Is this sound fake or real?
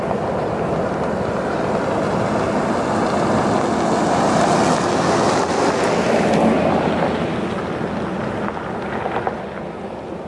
real